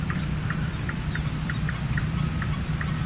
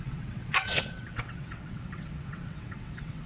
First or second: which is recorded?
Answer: first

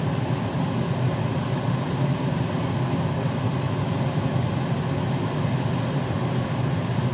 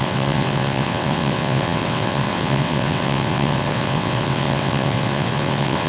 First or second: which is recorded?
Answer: first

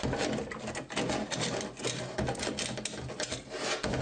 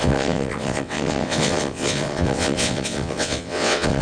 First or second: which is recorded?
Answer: first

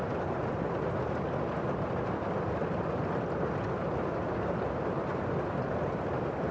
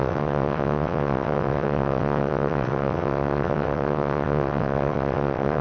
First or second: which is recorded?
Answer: first